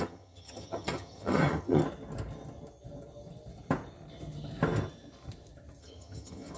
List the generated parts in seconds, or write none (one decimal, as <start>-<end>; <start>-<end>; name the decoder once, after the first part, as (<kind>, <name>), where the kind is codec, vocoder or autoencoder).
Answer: 0.0-1.8 (vocoder, HiFi-GAN); 5.8-6.6

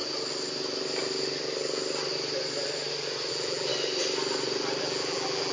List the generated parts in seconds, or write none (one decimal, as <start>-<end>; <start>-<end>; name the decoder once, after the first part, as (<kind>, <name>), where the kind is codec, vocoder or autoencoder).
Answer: 3.3-3.7 (vocoder, BigVGAN v2); 4.8-5.5

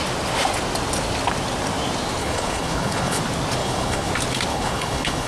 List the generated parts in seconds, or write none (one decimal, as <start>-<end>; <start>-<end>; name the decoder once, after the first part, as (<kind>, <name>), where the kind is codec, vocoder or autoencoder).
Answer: 2.2-3.2 (codec, HILCodec); 3.6-4.1; 4.5-5.3

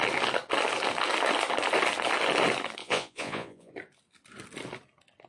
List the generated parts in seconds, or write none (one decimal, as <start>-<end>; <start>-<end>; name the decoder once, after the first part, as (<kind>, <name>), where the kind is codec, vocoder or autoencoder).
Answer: 2.8-3.7 (vocoder, Vocos)

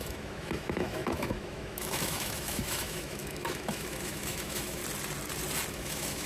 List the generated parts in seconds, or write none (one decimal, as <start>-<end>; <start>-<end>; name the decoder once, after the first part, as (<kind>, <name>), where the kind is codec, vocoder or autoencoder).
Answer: 0.0-4.8 (autoencoder, DAC-VAE); 5.7-6.3

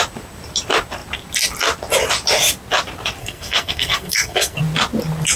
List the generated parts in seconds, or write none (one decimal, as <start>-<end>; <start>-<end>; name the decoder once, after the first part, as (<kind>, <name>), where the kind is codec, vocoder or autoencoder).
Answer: 3.2-4.6 (codec, SNAC)

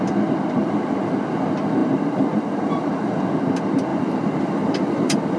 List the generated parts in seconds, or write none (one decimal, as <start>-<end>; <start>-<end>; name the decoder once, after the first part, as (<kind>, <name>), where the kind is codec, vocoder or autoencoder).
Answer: 0.6-1.1 (vocoder, BigVGAN v2); 1.8-3.2; 3.9-5.4

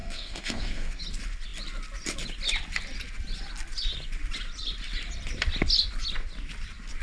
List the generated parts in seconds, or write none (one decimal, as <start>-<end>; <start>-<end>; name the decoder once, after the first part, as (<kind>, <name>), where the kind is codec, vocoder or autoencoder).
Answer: 0.0-1.0 (codec, SNAC)